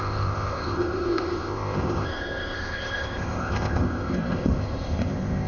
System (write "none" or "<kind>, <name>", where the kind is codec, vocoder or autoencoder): codec, ZipCodec